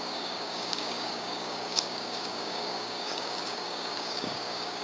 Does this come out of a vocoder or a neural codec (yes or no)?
yes